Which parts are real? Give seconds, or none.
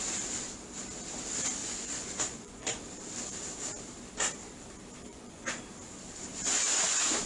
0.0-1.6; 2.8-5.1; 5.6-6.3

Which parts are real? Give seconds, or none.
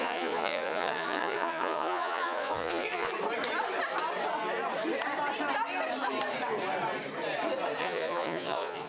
3.1-7.8